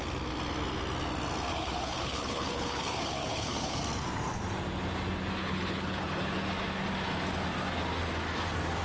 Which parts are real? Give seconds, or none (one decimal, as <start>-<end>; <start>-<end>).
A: 0.0-1.5; 3.8-5.4; 6.3-8.8